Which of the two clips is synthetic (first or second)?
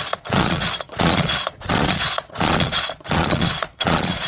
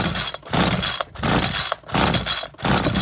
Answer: first